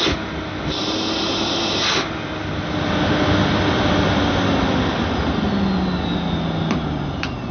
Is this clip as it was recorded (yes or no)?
yes